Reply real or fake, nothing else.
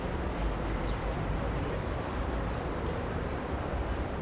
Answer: fake